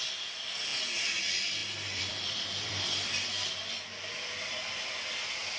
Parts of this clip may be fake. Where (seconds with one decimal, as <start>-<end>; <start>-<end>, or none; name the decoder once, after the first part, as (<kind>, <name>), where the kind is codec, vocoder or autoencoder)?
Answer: 1.6-4.5 (vocoder, BigVGAN v2)